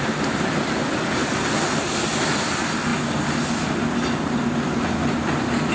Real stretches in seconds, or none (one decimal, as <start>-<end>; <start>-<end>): 0.0-5.7